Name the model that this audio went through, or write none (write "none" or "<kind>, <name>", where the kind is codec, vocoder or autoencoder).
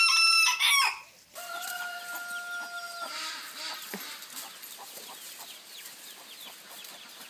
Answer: none